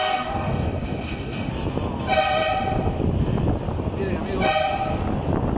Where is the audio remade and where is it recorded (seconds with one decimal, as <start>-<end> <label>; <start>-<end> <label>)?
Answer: 0.0-1.5 remade; 1.5-5.6 recorded